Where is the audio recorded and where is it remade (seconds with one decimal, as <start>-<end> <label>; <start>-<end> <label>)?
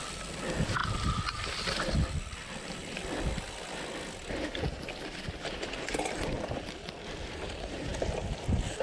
0.0-8.8 recorded